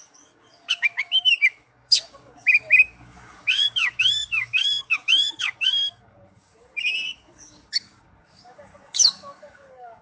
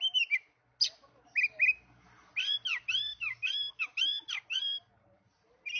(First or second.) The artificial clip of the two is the first